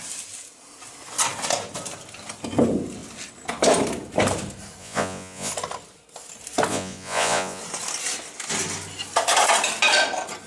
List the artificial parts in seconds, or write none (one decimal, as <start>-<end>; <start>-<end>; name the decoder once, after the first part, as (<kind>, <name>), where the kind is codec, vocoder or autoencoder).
4.8-5.5 (vocoder, Vocos); 6.7-7.6